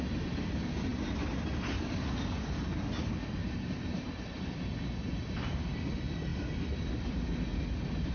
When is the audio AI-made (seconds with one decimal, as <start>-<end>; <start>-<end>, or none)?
none